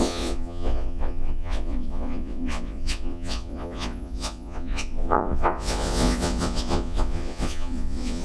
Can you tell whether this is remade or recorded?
remade